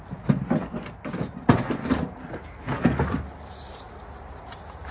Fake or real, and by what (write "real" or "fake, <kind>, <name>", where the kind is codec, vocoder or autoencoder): real